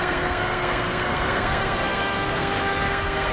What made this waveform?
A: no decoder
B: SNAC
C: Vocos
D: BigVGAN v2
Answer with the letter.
B